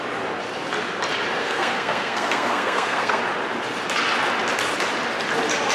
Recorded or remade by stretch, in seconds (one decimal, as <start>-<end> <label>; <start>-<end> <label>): 0.0-1.4 recorded; 1.4-3.2 remade; 3.2-5.7 recorded